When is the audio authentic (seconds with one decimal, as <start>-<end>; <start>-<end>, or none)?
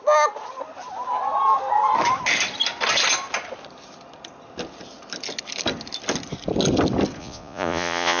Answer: 0.0-7.2